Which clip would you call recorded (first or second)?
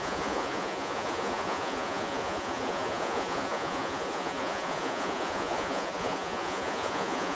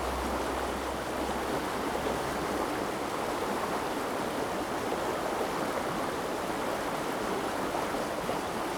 second